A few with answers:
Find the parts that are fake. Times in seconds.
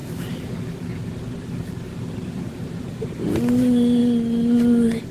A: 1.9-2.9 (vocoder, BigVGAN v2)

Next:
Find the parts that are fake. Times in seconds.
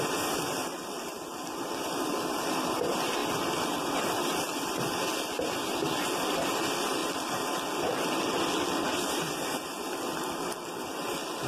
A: none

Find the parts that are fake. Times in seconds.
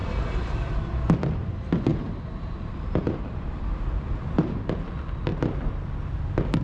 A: 0.0-0.8 (vocoder, BigVGAN v2); 1.9-4.4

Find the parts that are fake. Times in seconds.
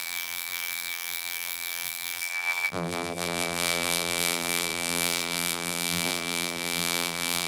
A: 0.0-7.5 (vocoder, BigVGAN v2)